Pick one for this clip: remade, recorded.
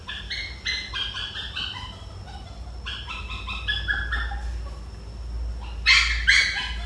recorded